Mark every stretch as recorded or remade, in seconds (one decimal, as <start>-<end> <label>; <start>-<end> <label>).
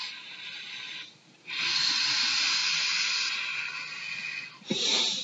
0.0-1.2 recorded; 1.2-2.6 remade; 2.6-4.4 recorded; 4.4-5.2 remade